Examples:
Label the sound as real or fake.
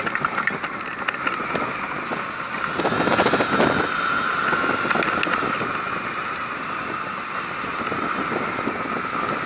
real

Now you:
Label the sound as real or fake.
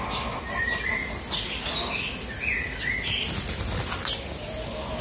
real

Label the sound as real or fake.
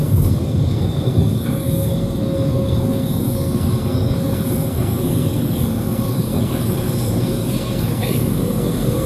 fake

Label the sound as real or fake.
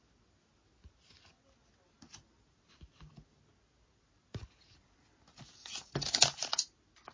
real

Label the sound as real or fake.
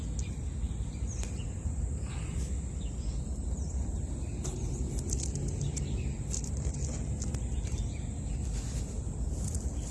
real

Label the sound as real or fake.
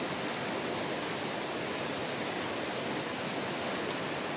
real